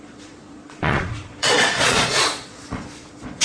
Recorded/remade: remade